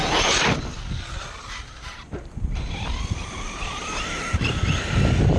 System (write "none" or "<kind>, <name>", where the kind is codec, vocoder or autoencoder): none